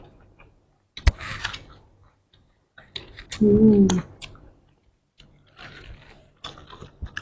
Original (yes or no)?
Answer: yes